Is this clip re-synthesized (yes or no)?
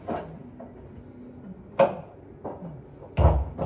no